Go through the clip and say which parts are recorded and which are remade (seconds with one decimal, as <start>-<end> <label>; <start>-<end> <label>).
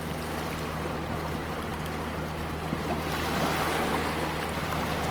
0.0-5.1 recorded